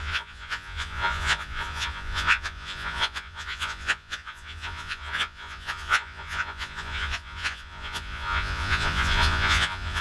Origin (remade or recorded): remade